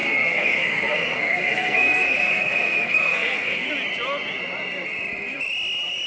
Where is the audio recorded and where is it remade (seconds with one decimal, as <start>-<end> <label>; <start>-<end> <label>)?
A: 0.0-3.7 remade; 3.7-6.1 recorded